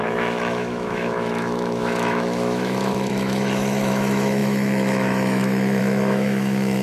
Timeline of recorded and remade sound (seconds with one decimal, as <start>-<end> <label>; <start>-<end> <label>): 0.0-6.8 remade